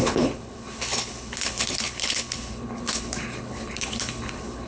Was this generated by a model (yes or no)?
yes